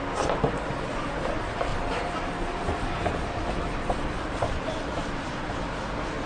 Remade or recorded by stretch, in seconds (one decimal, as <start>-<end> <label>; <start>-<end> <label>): 0.0-1.7 recorded; 1.7-5.5 remade; 5.5-6.3 recorded